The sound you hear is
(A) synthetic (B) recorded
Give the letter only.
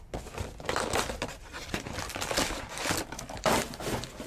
B